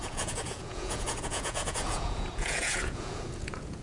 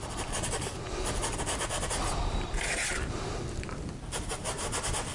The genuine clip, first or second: second